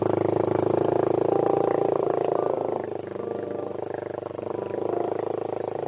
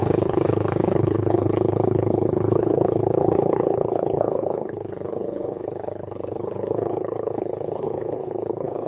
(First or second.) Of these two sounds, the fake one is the second